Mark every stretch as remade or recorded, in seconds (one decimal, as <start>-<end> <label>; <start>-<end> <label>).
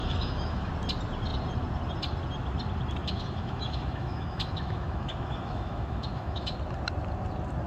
0.0-0.7 remade; 0.7-3.0 recorded; 3.0-6.6 remade; 6.6-7.7 recorded